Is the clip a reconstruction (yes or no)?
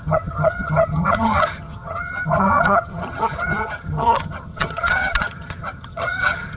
yes